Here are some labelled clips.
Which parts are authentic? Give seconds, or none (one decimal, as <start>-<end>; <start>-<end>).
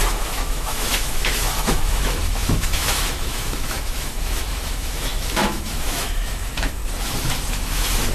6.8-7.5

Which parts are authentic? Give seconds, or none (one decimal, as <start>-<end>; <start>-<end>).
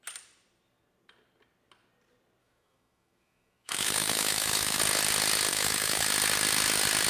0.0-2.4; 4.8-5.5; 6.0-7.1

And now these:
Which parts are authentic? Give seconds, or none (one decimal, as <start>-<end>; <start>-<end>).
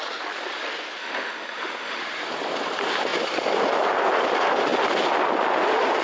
0.0-1.0; 2.0-6.0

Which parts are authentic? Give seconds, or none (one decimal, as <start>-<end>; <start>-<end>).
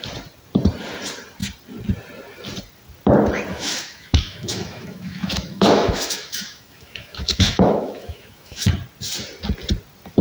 0.0-3.5; 8.7-10.2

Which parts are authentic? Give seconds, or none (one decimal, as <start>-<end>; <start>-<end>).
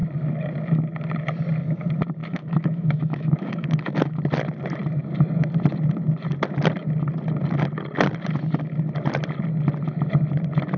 0.0-2.2; 4.2-10.8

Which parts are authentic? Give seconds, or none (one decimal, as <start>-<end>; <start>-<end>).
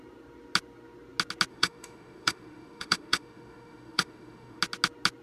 0.0-1.5; 4.6-5.2